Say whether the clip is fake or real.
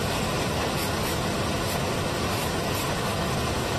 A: real